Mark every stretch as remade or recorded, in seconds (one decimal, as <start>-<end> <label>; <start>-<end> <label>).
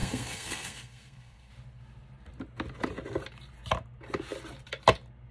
0.0-1.5 remade; 1.5-5.3 recorded